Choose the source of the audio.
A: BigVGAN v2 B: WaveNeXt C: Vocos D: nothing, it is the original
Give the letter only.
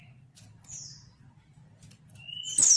D